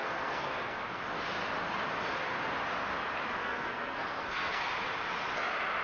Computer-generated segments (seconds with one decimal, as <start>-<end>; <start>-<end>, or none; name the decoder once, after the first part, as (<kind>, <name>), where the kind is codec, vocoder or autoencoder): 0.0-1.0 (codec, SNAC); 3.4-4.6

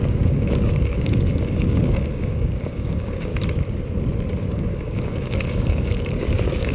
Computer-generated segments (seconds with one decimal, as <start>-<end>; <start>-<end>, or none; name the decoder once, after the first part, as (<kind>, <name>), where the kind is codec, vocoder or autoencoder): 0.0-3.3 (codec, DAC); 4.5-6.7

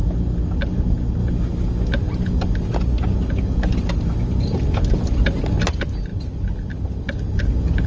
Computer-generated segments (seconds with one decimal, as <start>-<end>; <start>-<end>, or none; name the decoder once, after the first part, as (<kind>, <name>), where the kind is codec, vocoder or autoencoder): none

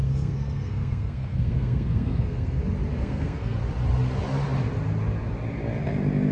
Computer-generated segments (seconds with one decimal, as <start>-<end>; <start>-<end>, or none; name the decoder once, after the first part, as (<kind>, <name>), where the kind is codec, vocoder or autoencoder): 0.0-2.6 (codec, SNAC); 3.0-3.6